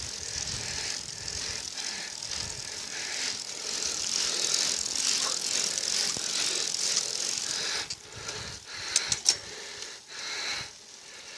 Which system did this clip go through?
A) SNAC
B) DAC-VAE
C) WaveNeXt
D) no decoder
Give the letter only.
D